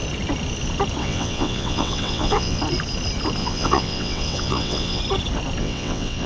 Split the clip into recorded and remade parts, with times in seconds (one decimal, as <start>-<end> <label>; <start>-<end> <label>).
0.0-1.0 recorded; 1.0-2.6 remade; 2.6-3.4 recorded; 3.4-5.0 remade; 5.0-5.6 recorded; 5.6-6.3 remade